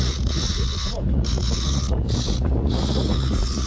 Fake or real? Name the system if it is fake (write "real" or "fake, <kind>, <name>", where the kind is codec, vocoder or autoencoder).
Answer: fake, vocoder, Vocos